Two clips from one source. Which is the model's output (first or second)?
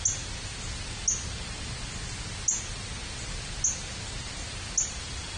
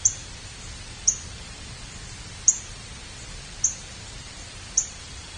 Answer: second